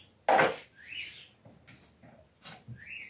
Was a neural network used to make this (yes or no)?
no